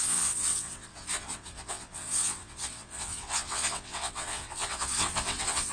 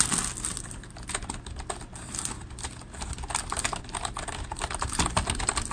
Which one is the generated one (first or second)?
first